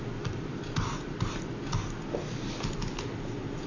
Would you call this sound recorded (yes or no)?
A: yes